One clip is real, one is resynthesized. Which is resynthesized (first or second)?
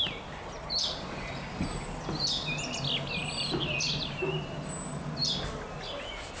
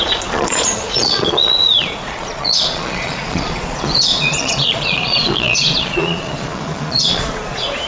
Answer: second